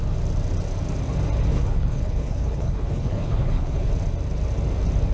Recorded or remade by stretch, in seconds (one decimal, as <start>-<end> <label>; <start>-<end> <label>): 0.0-1.5 recorded; 1.5-3.9 remade; 3.9-5.1 recorded